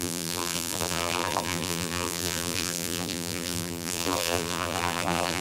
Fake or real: fake